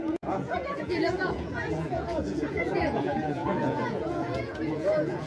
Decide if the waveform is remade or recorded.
remade